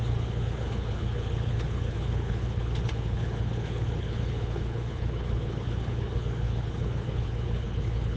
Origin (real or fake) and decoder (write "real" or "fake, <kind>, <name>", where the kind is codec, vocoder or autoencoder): fake, codec, HILCodec